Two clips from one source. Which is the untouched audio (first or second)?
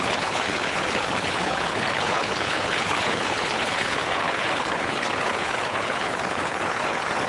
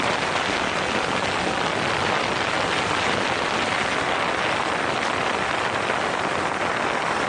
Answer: second